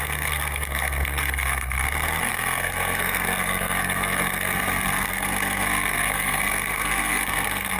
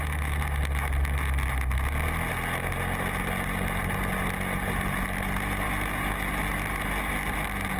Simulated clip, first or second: first